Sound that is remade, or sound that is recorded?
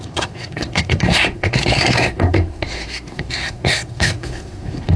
remade